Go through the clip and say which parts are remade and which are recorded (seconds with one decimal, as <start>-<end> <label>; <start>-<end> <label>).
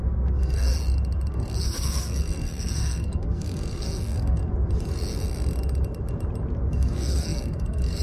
0.0-0.7 remade; 0.7-1.3 recorded; 1.3-4.4 remade; 4.4-6.7 recorded; 6.7-8.0 remade